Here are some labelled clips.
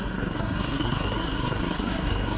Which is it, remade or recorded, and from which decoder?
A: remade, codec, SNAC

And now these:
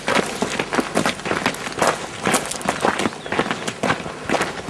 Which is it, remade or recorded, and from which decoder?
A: recorded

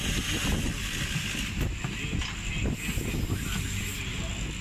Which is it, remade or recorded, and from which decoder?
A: recorded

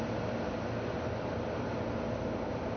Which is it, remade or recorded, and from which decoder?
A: recorded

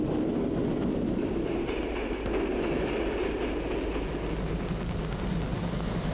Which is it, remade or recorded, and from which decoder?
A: recorded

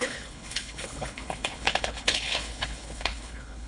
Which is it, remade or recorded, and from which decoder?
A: remade, codec, HILCodec